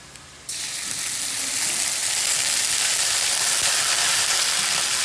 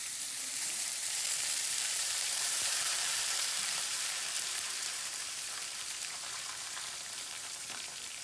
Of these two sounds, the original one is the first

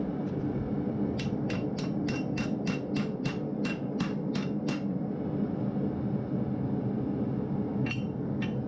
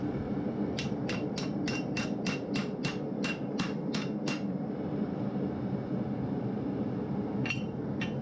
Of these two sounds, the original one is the first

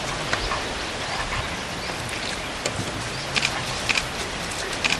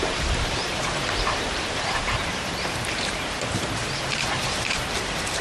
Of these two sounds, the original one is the first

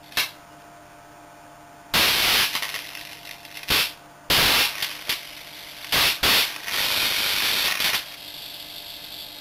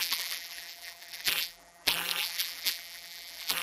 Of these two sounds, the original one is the first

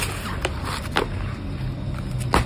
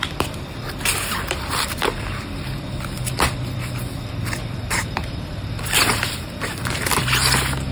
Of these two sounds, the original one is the first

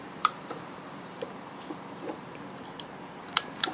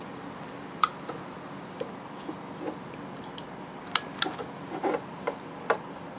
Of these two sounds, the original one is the second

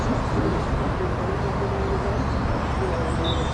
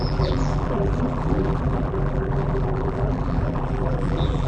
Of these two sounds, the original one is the first